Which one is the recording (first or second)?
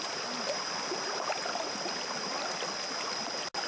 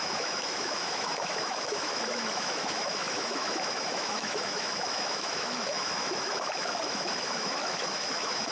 first